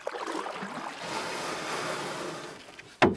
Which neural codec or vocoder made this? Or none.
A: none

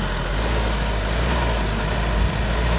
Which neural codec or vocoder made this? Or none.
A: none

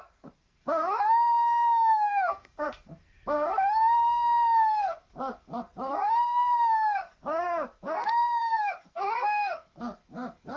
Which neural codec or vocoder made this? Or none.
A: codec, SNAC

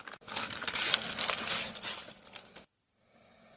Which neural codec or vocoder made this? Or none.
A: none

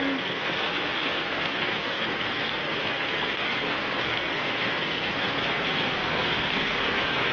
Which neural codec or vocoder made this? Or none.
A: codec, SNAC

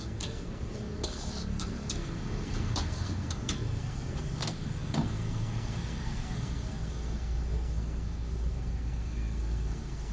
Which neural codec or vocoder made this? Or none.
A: codec, SNAC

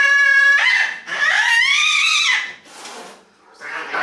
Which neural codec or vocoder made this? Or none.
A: none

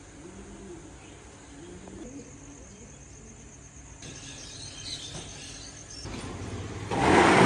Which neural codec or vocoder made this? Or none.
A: none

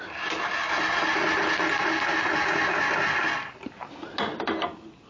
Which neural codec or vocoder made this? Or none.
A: none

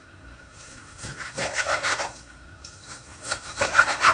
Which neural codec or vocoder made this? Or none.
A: codec, SNAC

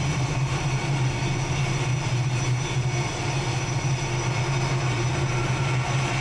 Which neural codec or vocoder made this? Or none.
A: none